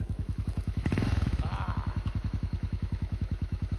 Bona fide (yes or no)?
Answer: no